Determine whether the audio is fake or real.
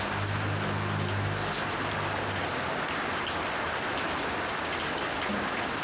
real